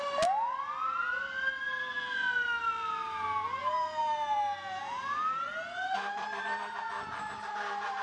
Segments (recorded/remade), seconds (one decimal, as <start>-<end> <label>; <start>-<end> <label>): 0.0-3.6 recorded; 3.6-8.0 remade